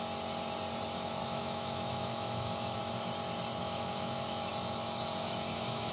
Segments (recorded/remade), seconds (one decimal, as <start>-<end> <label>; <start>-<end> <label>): 0.0-1.2 recorded; 1.2-2.8 remade; 2.8-3.6 recorded; 3.6-4.5 remade; 4.5-5.2 recorded; 5.2-5.9 remade